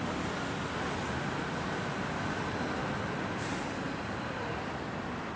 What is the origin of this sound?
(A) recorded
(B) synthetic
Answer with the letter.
A